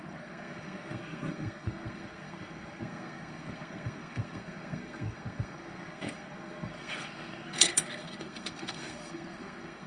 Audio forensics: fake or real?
fake